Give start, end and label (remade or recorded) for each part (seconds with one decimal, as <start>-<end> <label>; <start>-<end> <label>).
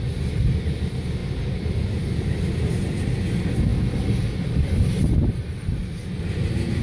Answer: 0.0-1.2 recorded; 1.2-2.7 remade; 2.7-6.8 recorded